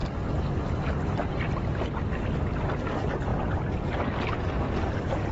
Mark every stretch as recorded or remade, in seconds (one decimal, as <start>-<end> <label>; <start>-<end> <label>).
0.0-5.3 recorded